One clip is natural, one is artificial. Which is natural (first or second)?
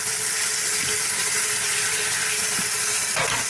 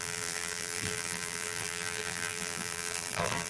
first